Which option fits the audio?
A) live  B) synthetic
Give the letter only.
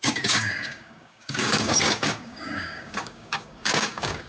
B